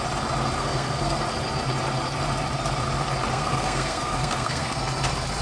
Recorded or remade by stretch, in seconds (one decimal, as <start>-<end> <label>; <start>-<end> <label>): 0.0-0.6 recorded; 0.6-1.2 remade; 1.2-3.3 recorded; 3.3-4.8 remade; 4.8-5.4 recorded